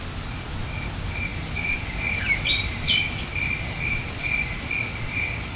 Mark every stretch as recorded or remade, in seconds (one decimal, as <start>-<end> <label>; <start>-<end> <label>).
0.0-1.3 recorded; 1.3-4.7 remade; 4.7-5.6 recorded